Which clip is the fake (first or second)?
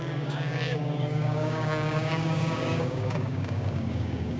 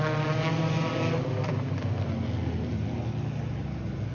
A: first